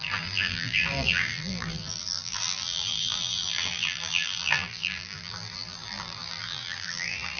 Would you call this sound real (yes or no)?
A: no